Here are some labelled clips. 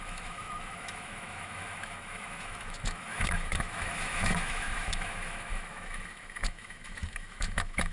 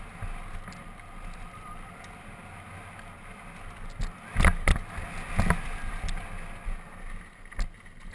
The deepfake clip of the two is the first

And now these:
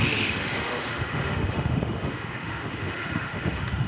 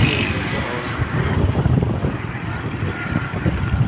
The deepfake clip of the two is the first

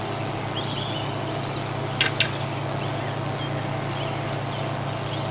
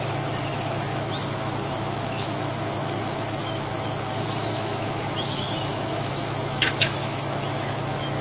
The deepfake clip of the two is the second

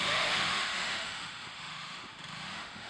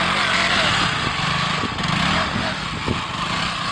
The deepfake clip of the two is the first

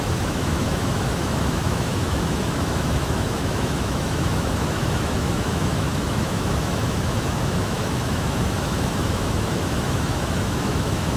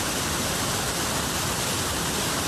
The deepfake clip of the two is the first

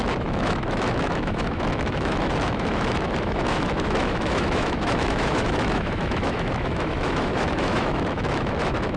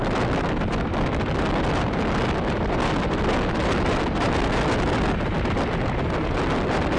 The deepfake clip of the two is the first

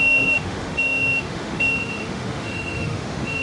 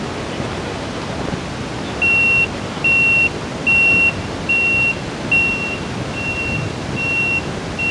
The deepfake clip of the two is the first